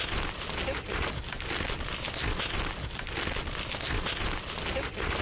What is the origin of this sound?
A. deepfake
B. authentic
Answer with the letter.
B